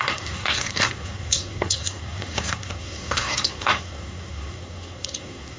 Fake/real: fake